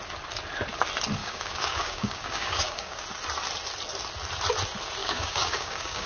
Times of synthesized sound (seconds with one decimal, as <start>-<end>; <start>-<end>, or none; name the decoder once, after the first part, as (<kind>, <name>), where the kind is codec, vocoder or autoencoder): 1.2-3.0 (codec, DAC); 5.0-6.1